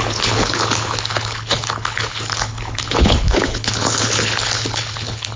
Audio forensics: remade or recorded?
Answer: remade